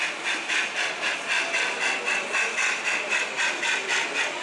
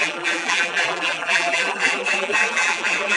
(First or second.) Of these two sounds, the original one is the first